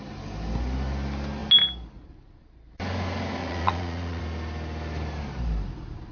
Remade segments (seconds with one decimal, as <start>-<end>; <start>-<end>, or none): 3.4-4.2